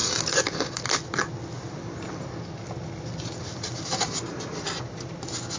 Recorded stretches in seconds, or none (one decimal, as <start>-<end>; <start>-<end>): 0.0-5.6